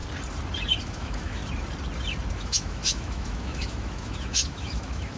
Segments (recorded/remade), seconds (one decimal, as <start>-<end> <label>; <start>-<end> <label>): 0.0-0.8 recorded; 0.8-1.4 remade; 1.4-2.3 recorded; 2.3-5.2 remade